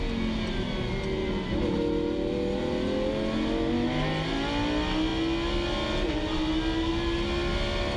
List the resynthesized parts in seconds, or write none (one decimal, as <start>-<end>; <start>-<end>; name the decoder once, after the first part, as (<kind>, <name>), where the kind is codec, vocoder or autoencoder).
none